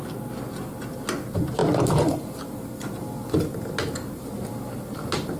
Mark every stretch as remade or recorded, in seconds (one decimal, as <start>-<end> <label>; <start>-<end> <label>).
0.0-5.4 recorded